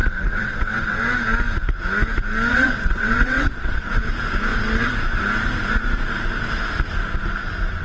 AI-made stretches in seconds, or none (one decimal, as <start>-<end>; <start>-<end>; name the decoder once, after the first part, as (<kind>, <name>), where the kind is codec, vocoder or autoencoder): 0.0-1.1 (vocoder, WaveNeXt); 2.5-4.0